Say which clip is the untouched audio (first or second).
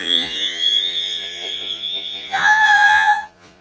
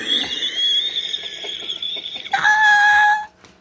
second